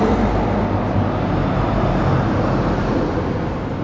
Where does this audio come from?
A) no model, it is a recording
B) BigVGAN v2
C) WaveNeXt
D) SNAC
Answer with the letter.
A